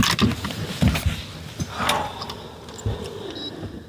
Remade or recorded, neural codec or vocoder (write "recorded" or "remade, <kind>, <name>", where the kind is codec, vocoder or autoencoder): recorded